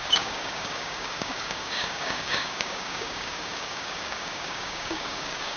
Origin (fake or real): fake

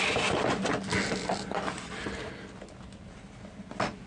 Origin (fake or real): real